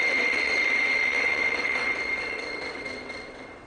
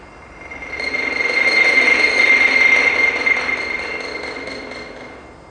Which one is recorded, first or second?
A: second